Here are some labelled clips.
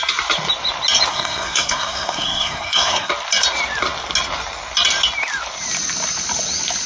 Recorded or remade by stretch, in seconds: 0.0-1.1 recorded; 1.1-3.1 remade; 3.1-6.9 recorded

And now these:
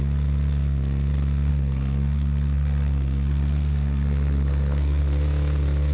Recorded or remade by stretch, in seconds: 0.0-1.5 recorded; 1.5-5.0 remade; 5.0-5.9 recorded